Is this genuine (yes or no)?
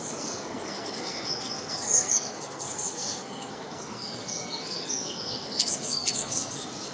no